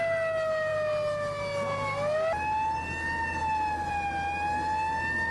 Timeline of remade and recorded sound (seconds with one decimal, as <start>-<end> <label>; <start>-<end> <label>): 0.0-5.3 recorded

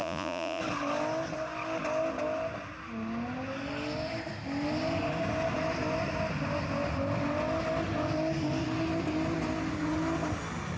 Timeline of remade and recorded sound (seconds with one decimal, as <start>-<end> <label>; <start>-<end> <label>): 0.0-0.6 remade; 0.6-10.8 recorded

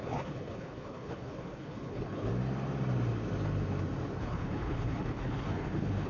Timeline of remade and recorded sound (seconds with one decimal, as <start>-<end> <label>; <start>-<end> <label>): 0.0-2.3 remade; 2.3-4.2 recorded; 4.2-6.1 remade

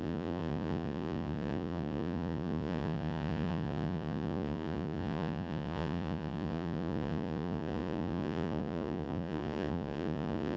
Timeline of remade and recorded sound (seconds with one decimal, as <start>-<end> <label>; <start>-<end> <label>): 0.0-10.6 remade

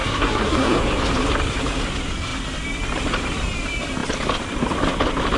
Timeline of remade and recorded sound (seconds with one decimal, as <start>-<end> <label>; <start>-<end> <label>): 0.0-0.8 remade; 0.8-5.4 recorded

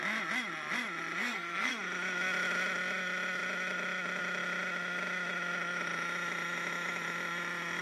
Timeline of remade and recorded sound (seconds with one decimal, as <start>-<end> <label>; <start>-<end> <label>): 0.0-1.2 recorded; 1.2-1.7 remade; 1.7-7.8 recorded